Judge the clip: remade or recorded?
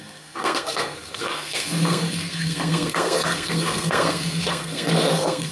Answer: remade